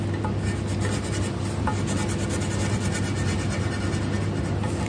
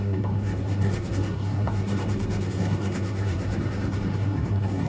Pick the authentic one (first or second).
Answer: first